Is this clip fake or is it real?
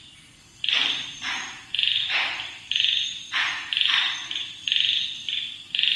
real